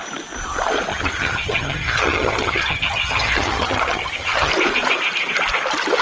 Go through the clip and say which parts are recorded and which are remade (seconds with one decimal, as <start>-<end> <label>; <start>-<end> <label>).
0.0-0.9 recorded; 0.9-4.5 remade; 4.5-6.0 recorded